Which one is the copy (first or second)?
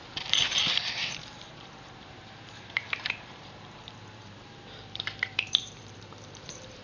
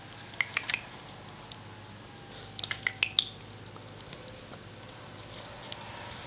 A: first